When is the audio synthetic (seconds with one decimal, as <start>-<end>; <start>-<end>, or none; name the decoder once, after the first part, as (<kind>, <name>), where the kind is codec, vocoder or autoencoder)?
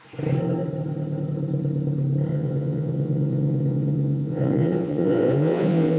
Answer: 2.3-6.0 (vocoder, Vocos)